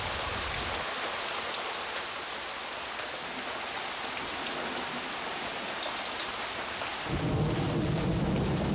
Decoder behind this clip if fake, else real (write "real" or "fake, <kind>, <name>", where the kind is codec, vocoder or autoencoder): real